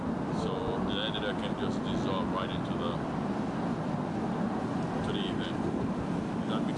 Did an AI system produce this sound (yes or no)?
no